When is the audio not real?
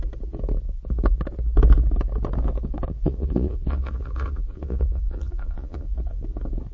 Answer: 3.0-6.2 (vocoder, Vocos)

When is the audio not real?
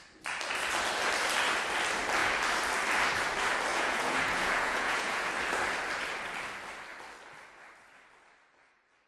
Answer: 3.7-5.3 (vocoder, Vocos)